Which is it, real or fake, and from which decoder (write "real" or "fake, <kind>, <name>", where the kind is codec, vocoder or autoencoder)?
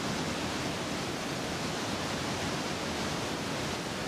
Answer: real